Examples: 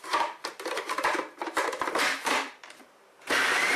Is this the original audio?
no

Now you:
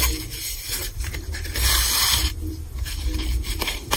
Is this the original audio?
no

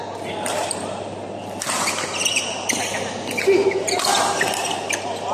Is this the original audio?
yes